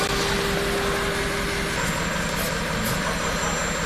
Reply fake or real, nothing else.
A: real